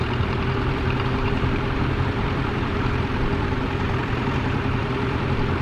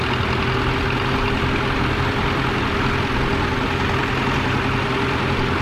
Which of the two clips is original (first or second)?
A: second